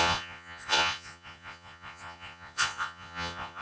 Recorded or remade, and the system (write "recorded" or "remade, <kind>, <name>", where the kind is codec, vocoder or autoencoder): remade, vocoder, Vocos